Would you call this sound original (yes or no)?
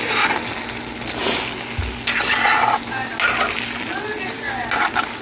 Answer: yes